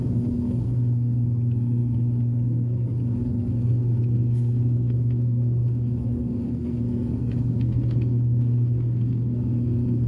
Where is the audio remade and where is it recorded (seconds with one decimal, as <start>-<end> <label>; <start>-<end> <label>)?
0.0-10.1 remade